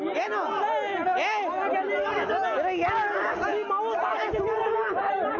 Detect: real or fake real